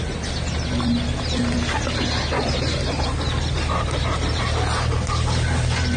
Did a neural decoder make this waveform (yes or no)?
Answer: no